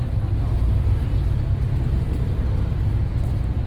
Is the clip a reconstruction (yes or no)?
no